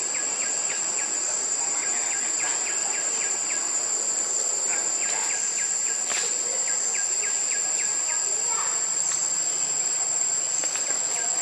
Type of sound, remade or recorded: recorded